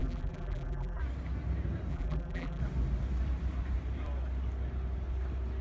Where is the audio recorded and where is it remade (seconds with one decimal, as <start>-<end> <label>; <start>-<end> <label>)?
0.0-1.0 remade; 1.0-1.9 recorded; 1.9-2.6 remade; 2.6-5.6 recorded